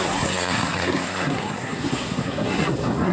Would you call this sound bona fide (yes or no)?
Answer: no